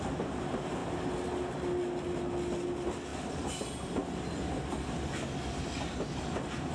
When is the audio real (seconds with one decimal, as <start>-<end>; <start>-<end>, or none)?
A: 0.0-6.7